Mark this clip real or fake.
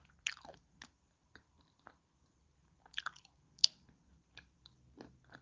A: real